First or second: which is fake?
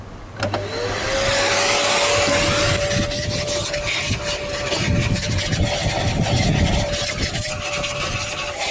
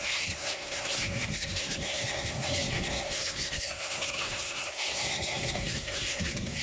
second